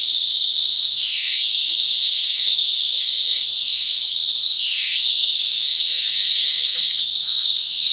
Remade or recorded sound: remade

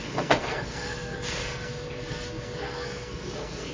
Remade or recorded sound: remade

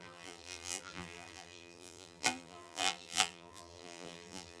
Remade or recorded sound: remade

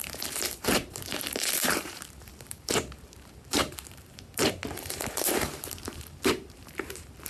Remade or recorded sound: remade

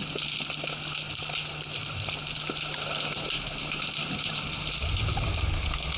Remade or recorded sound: recorded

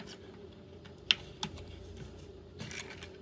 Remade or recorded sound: recorded